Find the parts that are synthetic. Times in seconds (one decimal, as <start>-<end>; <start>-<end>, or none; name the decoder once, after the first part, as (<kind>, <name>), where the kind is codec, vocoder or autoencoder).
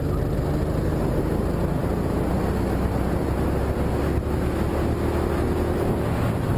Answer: none